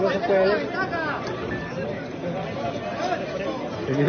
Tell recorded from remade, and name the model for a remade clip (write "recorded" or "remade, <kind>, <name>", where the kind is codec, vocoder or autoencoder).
recorded